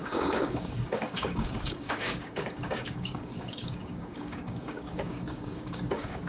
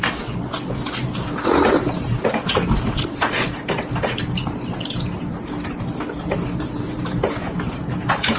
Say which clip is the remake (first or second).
first